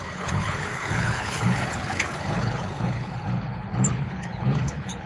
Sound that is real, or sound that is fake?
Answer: fake